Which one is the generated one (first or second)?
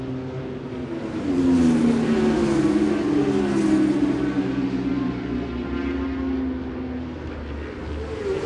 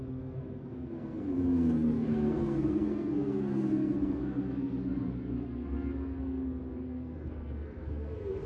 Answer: second